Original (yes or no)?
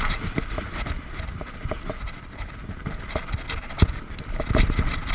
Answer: yes